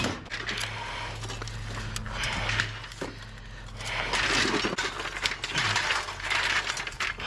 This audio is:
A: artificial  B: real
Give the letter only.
B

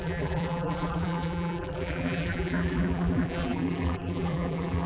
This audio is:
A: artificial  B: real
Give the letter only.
A